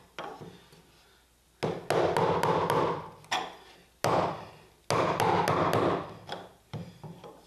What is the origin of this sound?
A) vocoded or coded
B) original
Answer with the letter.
B